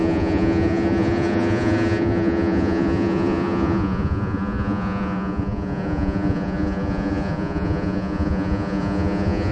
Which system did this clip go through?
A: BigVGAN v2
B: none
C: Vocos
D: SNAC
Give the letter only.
C